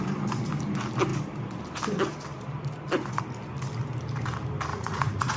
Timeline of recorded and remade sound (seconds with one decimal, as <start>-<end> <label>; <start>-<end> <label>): 0.0-4.7 recorded; 4.7-5.4 remade